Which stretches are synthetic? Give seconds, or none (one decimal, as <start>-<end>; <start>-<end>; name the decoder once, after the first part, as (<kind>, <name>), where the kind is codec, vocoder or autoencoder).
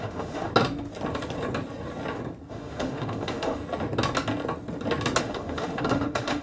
0.0-0.5 (autoencoder, DAC-VAE); 2.5-3.6; 5.2-6.4